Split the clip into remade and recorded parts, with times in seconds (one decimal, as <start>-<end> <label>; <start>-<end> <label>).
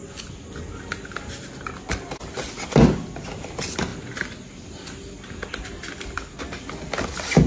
0.0-7.5 recorded